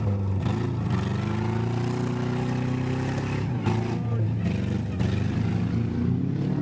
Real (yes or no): yes